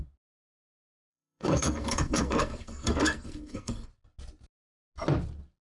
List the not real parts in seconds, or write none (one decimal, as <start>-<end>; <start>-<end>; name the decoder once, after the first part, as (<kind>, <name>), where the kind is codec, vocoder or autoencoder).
1.1-3.9 (codec, SNAC)